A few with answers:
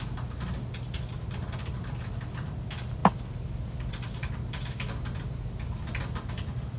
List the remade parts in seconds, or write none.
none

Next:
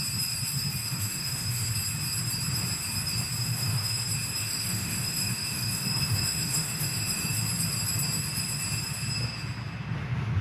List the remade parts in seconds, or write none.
0.8-1.7 (autoencoder, DAC-VAE); 3.4-4.0; 4.4-7.4

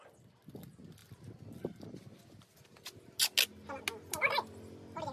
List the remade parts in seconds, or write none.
none

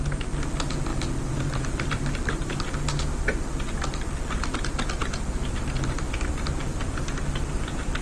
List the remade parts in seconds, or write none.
none

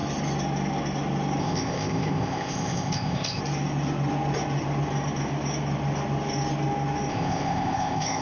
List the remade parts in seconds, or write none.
1.4-3.4 (codec, ZipCodec); 7.1-8.2

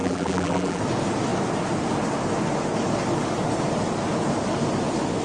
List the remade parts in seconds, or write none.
0.0-0.8 (vocoder, BigVGAN v2)